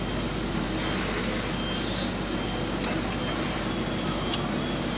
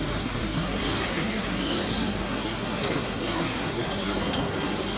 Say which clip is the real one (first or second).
first